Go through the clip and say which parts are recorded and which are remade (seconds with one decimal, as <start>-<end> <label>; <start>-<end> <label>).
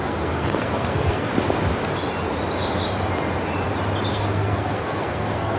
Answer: 0.0-1.3 remade; 1.3-4.1 recorded; 4.1-5.6 remade